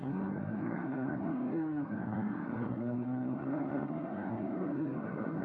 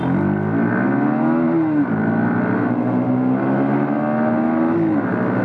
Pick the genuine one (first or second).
second